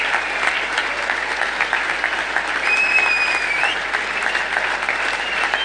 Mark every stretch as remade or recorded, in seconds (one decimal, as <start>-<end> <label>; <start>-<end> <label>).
0.0-5.6 recorded